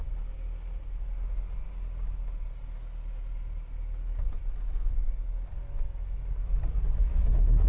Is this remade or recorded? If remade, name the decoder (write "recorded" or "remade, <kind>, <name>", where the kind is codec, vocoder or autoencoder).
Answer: recorded